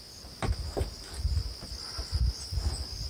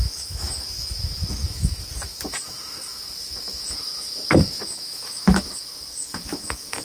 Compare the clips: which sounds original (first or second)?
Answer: first